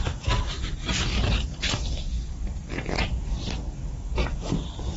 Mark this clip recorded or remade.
remade